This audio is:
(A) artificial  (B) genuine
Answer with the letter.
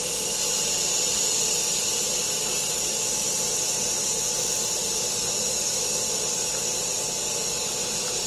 B